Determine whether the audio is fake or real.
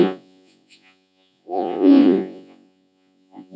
fake